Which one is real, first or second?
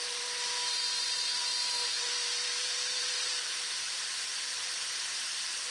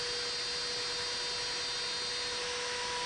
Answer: second